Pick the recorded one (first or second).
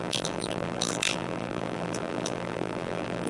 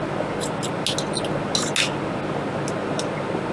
second